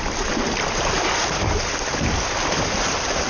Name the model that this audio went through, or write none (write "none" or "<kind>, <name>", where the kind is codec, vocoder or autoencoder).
vocoder, BigVGAN v2